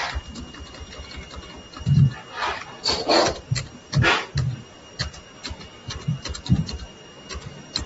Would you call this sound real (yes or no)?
yes